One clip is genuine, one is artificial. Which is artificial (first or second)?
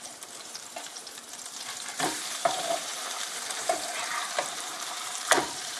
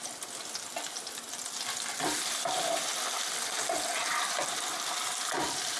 first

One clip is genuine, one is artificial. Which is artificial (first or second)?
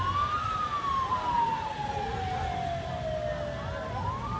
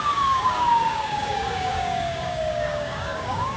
second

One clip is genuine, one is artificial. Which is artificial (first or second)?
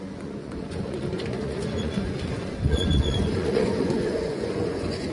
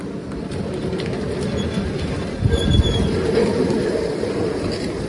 first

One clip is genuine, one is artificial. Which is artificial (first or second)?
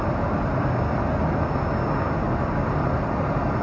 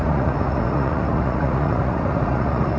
second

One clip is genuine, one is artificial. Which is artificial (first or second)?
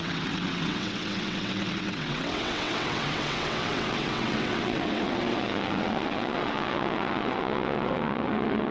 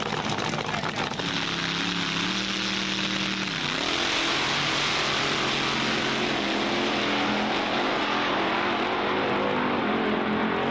first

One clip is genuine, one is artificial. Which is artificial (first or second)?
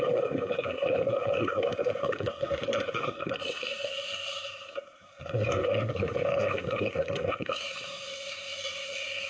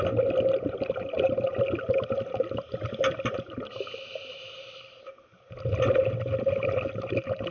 first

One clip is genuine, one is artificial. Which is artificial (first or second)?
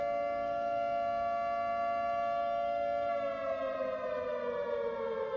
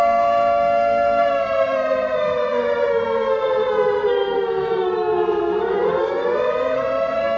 second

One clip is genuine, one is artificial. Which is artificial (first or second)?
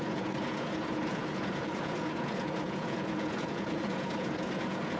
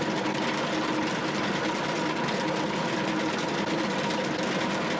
first